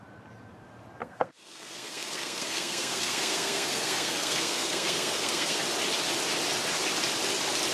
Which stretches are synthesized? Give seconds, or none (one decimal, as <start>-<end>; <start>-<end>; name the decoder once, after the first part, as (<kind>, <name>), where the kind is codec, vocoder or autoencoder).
1.0-5.6 (codec, SNAC)